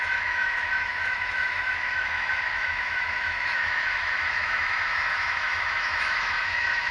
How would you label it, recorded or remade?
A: remade